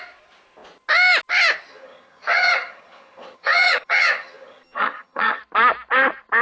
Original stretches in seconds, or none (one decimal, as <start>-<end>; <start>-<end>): 0.0-1.7; 5.4-6.4

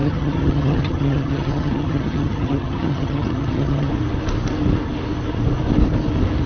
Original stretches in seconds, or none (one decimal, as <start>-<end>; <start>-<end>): 3.9-6.5

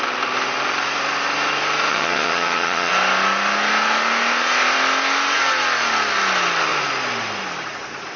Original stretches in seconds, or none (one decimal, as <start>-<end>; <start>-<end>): 0.0-1.9; 2.9-8.2

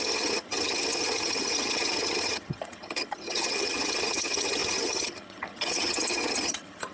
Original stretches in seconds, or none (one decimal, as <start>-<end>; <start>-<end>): none

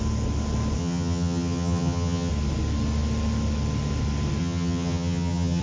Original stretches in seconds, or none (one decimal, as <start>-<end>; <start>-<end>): 0.0-0.8; 2.3-4.4

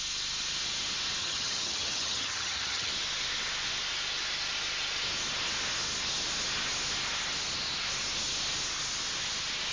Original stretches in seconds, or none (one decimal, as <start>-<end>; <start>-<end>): 0.0-1.2; 2.9-9.7

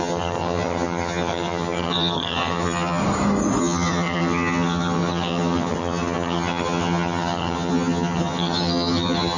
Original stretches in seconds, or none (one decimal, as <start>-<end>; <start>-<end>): 3.0-3.6

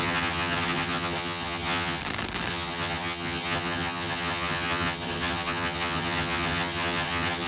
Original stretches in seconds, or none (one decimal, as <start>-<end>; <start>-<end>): 2.0-2.5